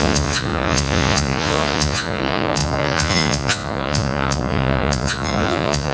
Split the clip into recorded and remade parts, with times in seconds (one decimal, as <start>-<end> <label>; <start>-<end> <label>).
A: 0.0-5.9 remade

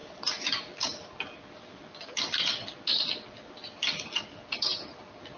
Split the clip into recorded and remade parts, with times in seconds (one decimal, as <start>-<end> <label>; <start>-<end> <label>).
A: 0.0-5.4 recorded